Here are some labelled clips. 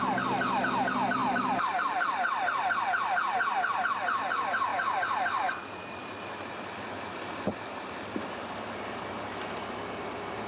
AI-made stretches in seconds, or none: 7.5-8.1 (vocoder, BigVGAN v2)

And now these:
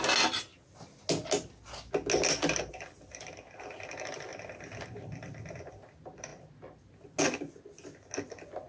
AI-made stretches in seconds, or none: none

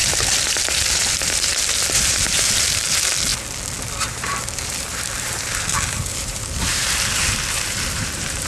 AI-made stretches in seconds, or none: 0.0-3.3 (vocoder, BigVGAN v2); 4.0-8.5

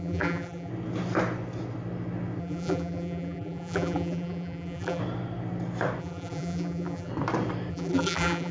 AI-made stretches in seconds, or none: 0.0-0.7 (vocoder, BigVGAN v2); 2.4-5.0; 6.0-7.1; 7.7-8.5

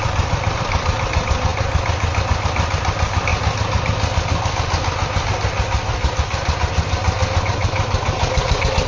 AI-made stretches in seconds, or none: 0.0-1.5 (vocoder, BigVGAN v2); 2.2-3.3; 7.4-8.9

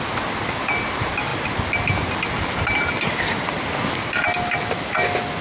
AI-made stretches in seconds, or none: none

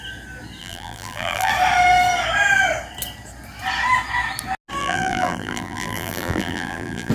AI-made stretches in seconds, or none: 0.6-1.5 (vocoder, BigVGAN v2); 4.8-7.1

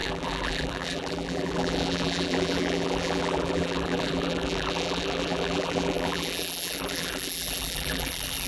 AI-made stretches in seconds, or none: 0.0-8.5 (vocoder, BigVGAN v2)